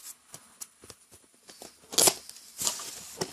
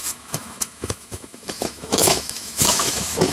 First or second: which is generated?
second